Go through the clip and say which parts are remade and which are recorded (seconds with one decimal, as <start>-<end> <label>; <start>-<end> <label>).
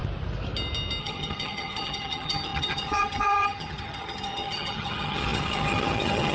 0.0-1.0 recorded; 1.0-6.3 remade